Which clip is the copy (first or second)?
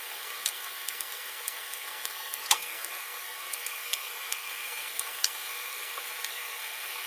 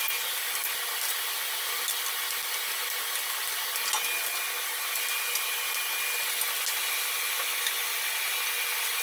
first